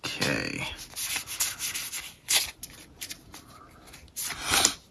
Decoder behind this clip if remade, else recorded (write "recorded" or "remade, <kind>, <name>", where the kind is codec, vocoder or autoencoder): recorded